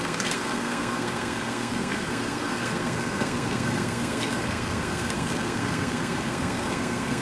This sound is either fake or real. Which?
fake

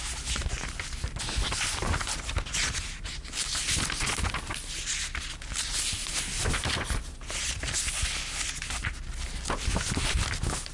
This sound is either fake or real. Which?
real